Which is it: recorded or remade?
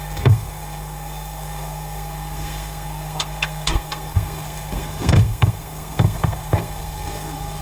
remade